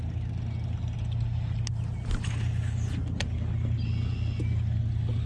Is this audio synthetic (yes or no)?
no